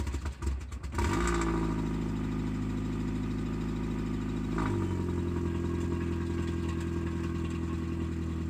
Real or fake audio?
real